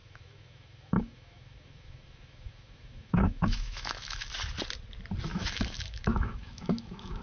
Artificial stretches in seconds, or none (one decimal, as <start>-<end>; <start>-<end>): 0.0-4.3; 5.3-7.2